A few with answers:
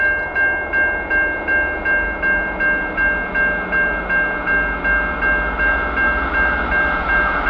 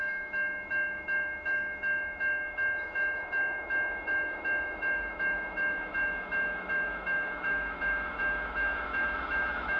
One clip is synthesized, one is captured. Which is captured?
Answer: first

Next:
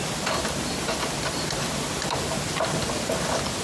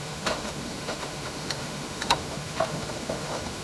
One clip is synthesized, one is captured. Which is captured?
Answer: first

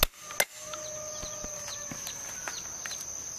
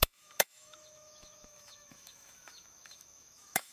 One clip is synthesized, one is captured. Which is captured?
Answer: first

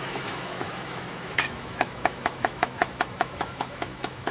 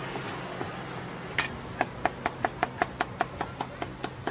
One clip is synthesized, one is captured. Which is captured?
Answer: second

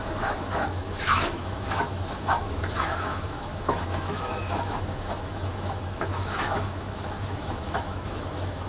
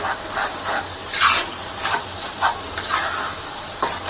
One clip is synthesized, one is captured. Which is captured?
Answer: second